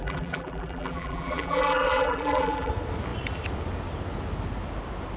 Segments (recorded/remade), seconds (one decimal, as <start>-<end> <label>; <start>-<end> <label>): 0.0-2.7 remade; 2.7-5.2 recorded